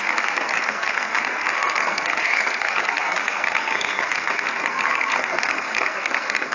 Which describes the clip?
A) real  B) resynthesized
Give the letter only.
B